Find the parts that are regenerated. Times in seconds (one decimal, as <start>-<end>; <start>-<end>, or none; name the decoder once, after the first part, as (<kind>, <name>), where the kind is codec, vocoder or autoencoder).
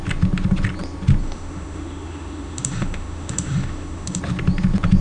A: 1.2-4.2 (autoencoder, DAC-VAE)